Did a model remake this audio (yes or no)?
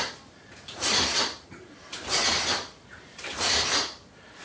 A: yes